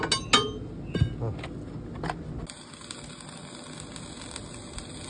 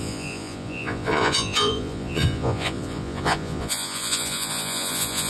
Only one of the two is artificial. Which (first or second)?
second